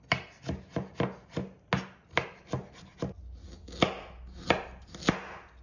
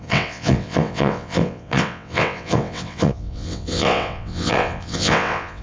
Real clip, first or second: first